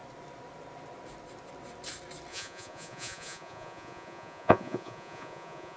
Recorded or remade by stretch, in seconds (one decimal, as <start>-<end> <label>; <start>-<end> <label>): 0.0-2.3 recorded; 2.3-5.8 remade

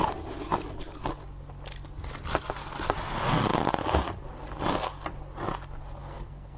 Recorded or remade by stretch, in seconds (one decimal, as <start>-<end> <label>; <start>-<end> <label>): 0.0-6.0 recorded; 6.0-6.6 remade

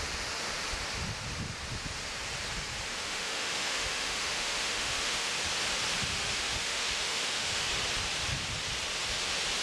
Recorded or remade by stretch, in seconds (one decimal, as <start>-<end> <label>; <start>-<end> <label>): 0.0-3.0 recorded; 3.0-5.3 remade; 5.3-6.1 recorded; 6.1-7.7 remade; 7.7-9.6 recorded

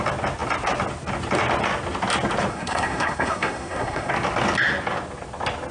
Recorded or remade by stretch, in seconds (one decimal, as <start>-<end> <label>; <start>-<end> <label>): 0.0-2.5 recorded; 2.5-4.1 remade; 4.1-5.7 recorded

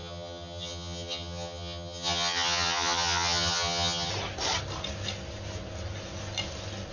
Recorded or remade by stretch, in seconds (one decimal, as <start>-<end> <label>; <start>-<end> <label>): 0.0-4.1 remade; 4.1-6.9 recorded

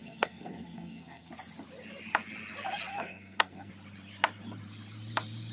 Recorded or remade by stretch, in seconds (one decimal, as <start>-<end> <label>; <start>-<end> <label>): 0.0-1.3 remade; 1.3-2.9 recorded; 2.9-3.7 remade; 3.7-5.5 recorded

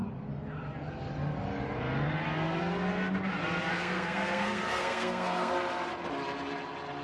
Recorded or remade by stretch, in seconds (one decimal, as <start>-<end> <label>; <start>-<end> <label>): 0.0-3.7 recorded; 3.7-5.5 remade; 5.5-7.0 recorded

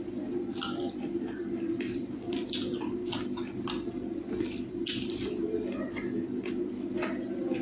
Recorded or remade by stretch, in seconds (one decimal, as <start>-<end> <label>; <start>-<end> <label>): 0.0-7.6 recorded